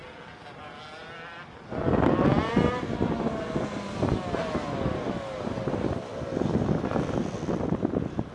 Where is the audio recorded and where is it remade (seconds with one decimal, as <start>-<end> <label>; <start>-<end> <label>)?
0.0-8.3 recorded